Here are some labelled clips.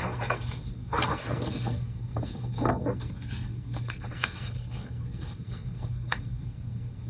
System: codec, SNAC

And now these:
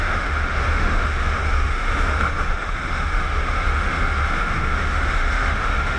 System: autoencoder, DAC-VAE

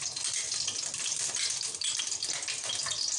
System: none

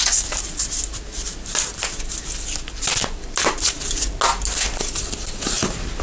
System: none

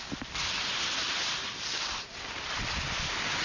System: none